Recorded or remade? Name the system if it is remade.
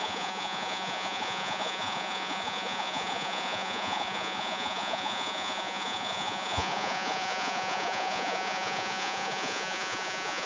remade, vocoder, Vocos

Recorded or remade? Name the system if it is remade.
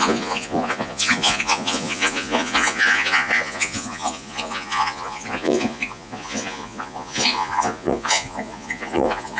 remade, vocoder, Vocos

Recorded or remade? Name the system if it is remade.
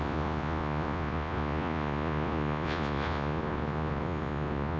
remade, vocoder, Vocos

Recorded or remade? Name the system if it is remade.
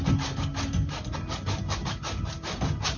recorded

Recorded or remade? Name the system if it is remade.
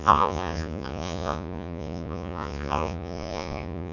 remade, vocoder, Vocos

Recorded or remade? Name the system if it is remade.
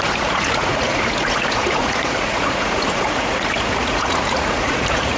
remade, vocoder, Vocos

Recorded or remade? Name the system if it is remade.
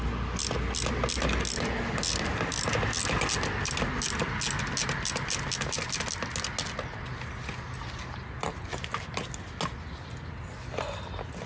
recorded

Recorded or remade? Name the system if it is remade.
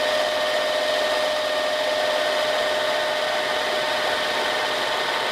recorded